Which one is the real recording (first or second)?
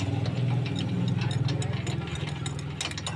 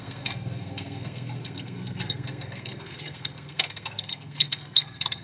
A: first